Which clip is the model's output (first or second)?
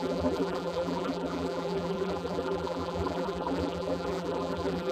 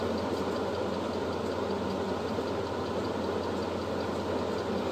first